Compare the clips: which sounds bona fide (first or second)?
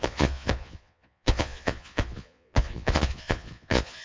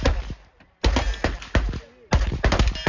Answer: second